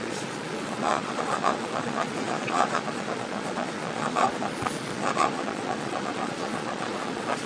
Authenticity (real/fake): fake